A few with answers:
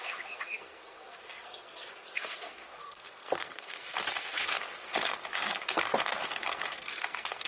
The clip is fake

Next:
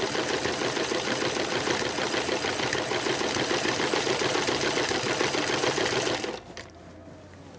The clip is real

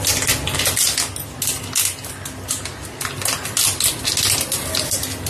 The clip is real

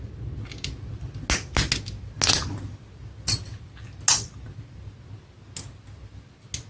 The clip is real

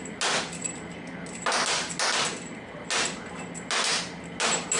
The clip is real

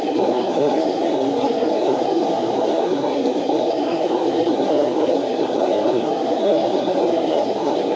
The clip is fake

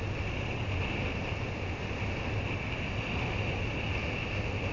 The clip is real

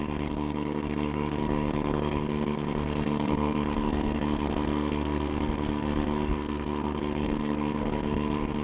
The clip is fake